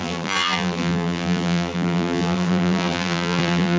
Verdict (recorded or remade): remade